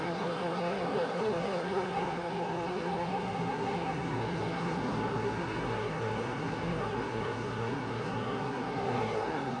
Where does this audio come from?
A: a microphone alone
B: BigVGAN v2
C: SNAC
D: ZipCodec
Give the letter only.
C